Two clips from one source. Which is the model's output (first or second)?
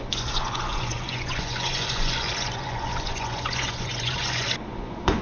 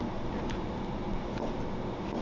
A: first